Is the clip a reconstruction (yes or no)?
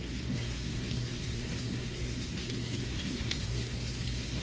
yes